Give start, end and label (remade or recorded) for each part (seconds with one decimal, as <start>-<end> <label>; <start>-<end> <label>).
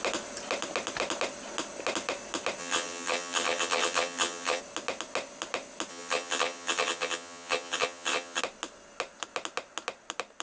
0.0-2.6 recorded; 2.6-4.6 remade; 4.6-5.9 recorded; 5.9-8.4 remade; 8.4-10.4 recorded